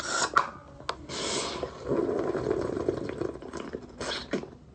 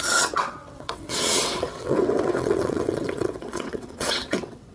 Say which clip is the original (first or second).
first